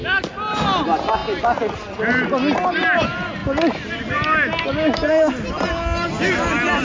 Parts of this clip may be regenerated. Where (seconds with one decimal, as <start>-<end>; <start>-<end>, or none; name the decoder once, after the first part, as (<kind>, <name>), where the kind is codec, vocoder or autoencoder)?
none